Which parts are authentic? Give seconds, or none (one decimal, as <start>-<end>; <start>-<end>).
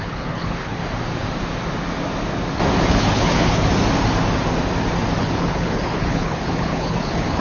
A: 0.8-2.9; 3.7-5.2